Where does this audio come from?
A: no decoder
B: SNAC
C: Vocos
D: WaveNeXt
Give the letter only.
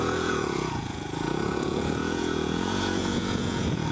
C